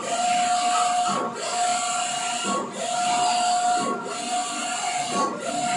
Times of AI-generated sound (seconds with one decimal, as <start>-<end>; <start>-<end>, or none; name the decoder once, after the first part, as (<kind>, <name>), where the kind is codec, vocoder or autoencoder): 4.3-5.2 (vocoder, Vocos)